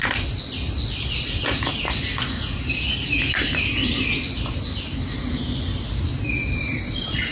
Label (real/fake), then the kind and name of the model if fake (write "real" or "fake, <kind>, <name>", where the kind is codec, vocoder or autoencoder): real